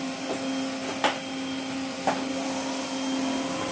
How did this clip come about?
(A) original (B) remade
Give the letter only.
A